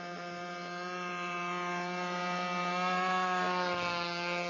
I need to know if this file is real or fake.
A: real